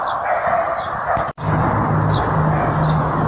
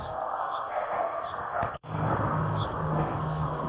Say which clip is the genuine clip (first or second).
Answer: first